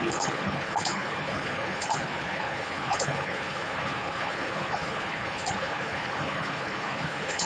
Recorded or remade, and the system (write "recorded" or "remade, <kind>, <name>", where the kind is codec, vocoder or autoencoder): remade, codec, HILCodec